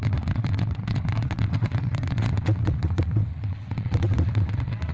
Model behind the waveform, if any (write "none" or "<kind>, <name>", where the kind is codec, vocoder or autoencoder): vocoder, WaveNeXt